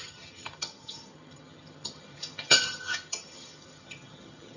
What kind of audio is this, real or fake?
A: fake